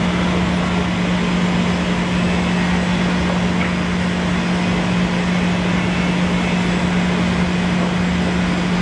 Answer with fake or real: real